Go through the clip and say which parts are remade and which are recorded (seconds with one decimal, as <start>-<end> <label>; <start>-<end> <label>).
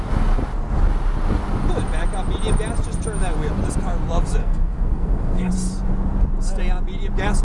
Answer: 0.0-4.4 recorded; 4.4-5.5 remade; 5.5-7.4 recorded